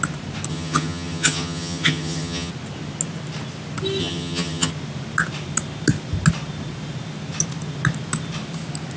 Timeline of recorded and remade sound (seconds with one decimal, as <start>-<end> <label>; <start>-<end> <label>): 0.0-0.5 recorded; 0.5-2.5 remade; 2.5-4.0 recorded; 4.0-4.7 remade; 4.7-9.0 recorded